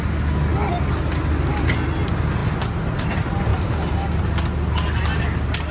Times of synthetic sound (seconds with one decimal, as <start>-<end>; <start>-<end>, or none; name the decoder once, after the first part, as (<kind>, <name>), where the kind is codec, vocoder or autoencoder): none